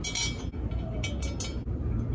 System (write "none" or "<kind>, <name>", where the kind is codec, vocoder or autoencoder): none